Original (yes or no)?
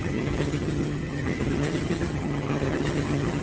no